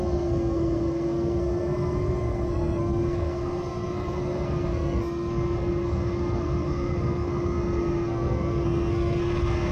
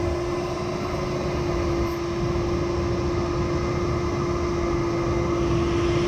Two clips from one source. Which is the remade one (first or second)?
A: first